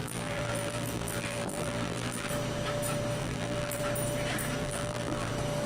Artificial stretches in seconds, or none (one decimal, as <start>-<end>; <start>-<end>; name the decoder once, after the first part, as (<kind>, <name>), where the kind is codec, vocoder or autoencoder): 0.0-2.3 (vocoder, BigVGAN v2); 3.2-3.8; 4.6-5.3